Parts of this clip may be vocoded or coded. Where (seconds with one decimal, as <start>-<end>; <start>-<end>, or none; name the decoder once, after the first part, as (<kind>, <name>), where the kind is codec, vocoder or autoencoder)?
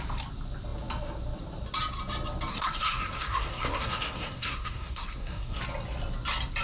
2.5-5.6 (codec, SNAC)